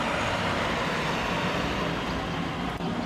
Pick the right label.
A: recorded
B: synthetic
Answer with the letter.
A